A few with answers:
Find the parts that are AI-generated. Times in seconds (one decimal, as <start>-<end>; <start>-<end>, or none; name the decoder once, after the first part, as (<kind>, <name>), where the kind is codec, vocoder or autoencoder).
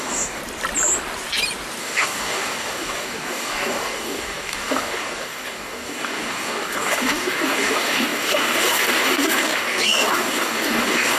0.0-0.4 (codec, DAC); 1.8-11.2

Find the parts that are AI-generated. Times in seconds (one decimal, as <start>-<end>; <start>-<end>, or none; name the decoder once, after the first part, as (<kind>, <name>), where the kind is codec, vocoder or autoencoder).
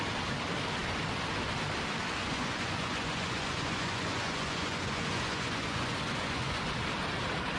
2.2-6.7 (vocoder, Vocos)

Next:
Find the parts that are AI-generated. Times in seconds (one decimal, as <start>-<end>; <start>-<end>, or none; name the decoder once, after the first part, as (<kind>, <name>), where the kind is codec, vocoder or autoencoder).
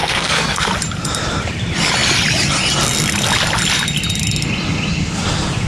0.0-0.7 (codec, SNAC)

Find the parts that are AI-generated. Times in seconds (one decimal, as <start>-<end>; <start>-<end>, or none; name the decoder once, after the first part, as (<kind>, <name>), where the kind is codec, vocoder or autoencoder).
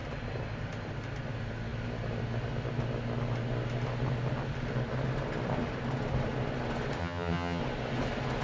7.0-7.6 (vocoder, HiFi-GAN)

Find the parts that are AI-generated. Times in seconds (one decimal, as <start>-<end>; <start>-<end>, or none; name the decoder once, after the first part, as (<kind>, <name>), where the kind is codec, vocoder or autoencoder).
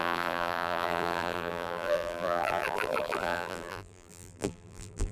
0.0-5.1 (vocoder, BigVGAN v2)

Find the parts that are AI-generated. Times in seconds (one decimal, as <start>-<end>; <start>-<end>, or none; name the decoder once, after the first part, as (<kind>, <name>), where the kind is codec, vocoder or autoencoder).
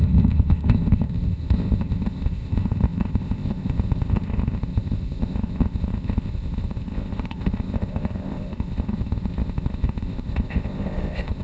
0.0-11.4 (codec, ZipCodec)